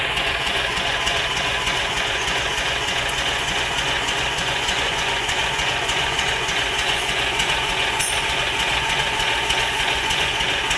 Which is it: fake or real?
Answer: fake